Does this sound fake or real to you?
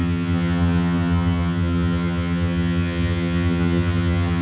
fake